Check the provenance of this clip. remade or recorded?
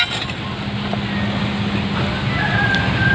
recorded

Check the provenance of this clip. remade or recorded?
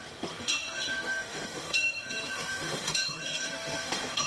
remade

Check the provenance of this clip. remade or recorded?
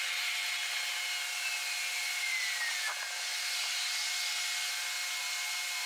recorded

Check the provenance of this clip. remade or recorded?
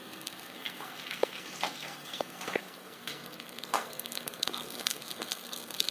remade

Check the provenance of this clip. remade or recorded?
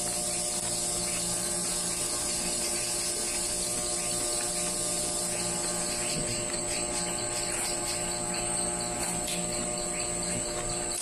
recorded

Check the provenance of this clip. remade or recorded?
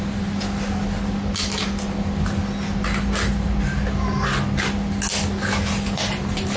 recorded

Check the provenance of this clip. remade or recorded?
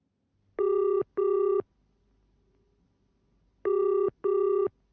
recorded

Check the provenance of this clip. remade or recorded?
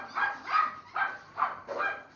remade